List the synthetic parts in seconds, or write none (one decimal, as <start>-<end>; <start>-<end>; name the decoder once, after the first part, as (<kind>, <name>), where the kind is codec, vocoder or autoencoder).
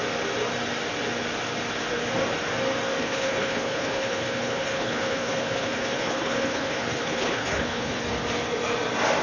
3.0-8.0 (codec, HILCodec)